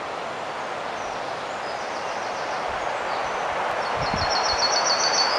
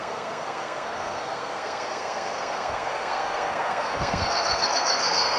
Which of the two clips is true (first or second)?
first